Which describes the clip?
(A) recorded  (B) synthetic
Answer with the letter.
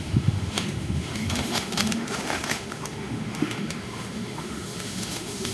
B